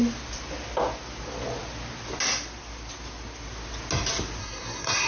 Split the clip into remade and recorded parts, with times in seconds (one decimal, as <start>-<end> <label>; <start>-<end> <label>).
0.0-4.4 recorded; 4.4-5.1 remade